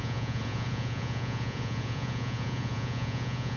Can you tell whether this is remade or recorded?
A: remade